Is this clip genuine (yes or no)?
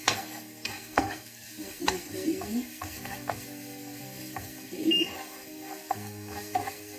no